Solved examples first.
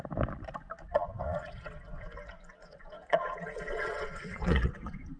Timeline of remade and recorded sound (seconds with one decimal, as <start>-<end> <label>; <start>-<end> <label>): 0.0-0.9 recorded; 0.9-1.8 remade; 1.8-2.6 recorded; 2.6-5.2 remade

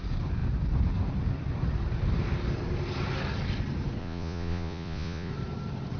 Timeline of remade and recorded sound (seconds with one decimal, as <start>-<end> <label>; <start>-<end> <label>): 0.0-4.0 recorded; 4.0-5.3 remade; 5.3-6.0 recorded

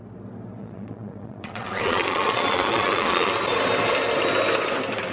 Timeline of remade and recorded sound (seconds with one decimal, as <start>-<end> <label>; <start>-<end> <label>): 0.0-0.6 recorded; 0.6-3.3 remade; 3.3-5.1 recorded